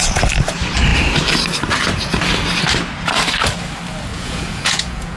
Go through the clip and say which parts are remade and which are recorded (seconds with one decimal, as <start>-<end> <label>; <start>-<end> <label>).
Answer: 0.0-4.1 recorded; 4.1-5.2 remade